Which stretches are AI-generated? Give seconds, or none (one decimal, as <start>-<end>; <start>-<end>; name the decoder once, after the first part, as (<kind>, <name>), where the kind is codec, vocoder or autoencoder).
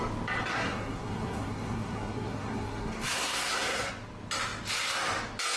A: 0.5-3.9 (codec, SNAC)